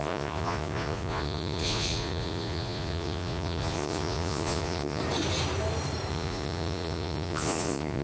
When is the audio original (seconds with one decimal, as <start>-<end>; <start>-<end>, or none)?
5.0-6.1